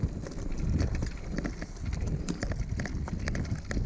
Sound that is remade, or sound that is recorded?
recorded